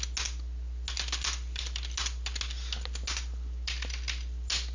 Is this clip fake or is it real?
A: real